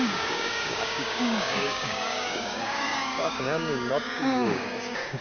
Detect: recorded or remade remade